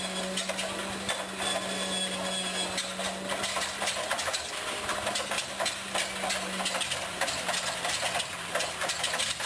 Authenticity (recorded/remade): recorded